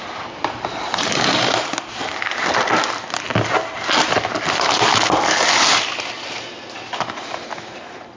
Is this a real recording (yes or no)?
yes